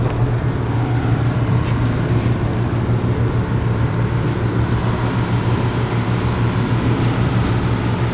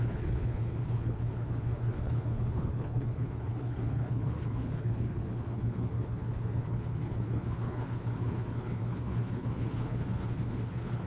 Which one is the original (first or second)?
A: first